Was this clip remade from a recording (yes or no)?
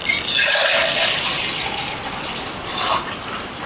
no